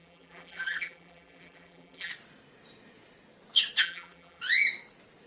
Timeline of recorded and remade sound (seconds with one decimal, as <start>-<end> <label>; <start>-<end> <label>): 0.0-2.1 remade; 2.1-3.8 recorded; 3.8-4.4 remade; 4.4-5.3 recorded